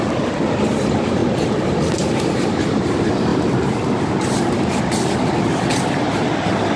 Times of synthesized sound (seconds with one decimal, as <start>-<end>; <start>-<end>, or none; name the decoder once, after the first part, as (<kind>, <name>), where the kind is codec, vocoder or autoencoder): none